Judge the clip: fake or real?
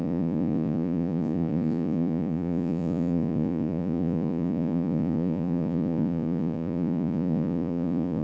fake